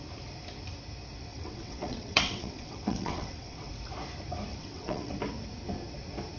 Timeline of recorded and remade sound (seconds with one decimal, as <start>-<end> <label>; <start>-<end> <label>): 0.0-1.3 recorded; 1.3-3.7 remade; 3.7-4.5 recorded; 4.5-5.1 remade; 5.1-6.4 recorded